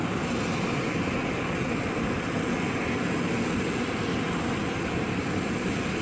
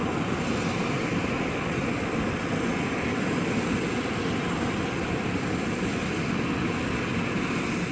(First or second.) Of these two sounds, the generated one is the second